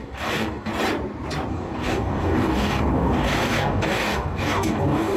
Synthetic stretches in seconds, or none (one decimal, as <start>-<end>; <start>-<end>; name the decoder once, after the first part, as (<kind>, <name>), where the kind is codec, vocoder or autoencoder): 0.0-0.7 (codec, DAC); 1.5-5.2